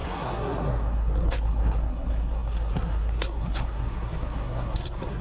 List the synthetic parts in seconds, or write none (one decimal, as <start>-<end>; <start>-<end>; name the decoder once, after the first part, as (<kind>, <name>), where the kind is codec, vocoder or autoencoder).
0.0-5.2 (codec, SNAC)